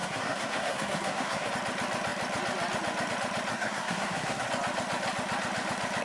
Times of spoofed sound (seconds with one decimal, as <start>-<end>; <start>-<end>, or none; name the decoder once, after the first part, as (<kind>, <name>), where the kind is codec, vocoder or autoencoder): 0.0-1.5 (codec, SNAC); 3.5-4.5